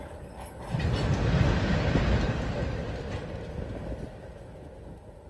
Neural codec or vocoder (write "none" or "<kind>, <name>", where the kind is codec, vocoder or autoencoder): none